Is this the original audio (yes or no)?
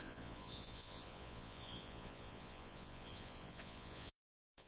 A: no